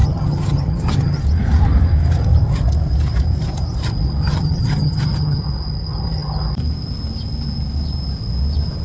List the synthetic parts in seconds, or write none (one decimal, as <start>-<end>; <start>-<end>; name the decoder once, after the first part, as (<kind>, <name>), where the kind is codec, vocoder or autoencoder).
0.0-1.2 (vocoder, HiFi-GAN); 4.2-5.4